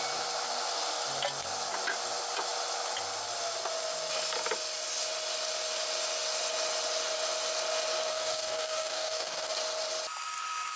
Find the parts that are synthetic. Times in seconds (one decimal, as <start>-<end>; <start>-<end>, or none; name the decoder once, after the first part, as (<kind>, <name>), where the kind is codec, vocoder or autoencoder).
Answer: 8.1-9.5 (codec, DAC)